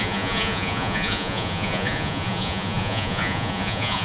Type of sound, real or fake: fake